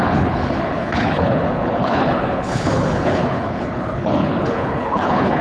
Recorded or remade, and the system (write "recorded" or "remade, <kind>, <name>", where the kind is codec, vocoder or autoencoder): remade, codec, HILCodec